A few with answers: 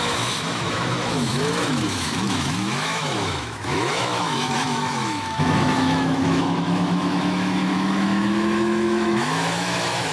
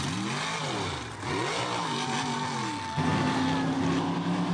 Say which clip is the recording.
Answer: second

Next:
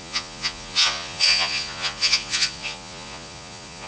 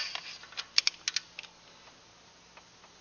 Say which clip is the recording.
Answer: second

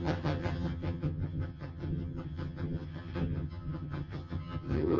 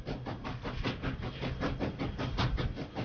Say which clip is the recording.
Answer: second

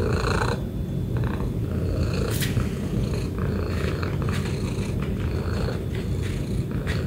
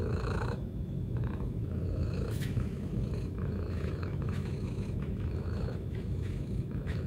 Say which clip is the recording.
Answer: first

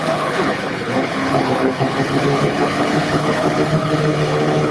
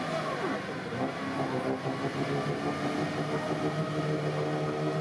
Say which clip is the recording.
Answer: second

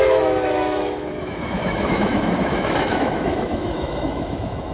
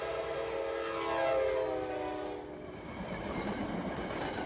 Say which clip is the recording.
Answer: second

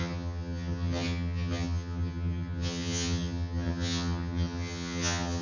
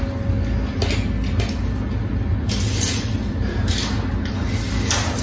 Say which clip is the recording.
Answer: second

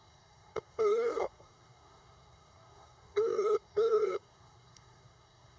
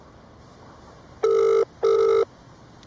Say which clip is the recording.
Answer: second